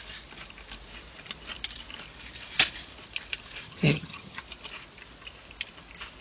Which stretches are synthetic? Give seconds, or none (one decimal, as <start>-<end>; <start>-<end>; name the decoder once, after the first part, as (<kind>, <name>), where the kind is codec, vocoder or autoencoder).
3.6-4.4 (vocoder, HiFi-GAN)